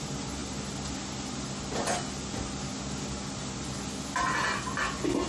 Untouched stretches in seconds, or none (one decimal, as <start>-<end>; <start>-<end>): 0.0-5.3